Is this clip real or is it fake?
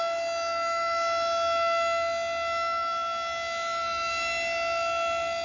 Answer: real